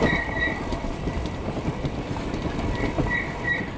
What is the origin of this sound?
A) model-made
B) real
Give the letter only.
A